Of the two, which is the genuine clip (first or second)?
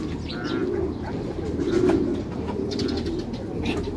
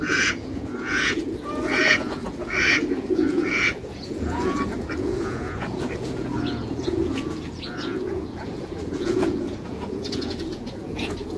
first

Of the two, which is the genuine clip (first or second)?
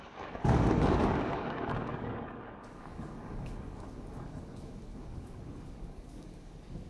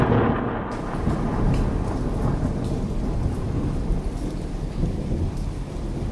second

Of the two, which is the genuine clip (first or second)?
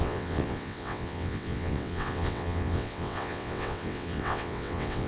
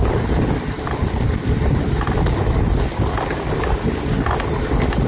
second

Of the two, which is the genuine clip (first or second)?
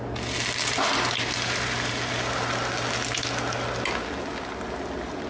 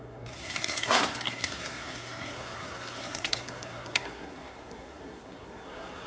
first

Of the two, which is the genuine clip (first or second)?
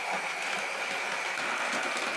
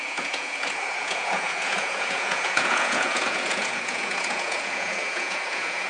first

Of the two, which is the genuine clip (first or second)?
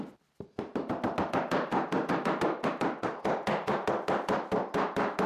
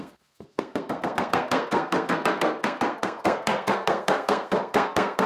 first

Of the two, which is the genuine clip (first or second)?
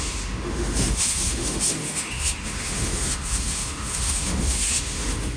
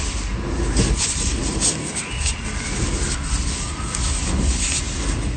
second